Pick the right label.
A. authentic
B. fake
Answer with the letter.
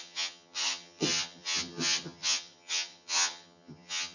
B